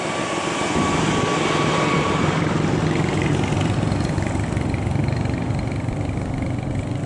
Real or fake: real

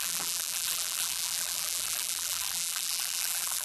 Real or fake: fake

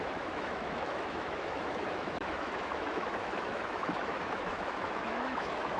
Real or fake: fake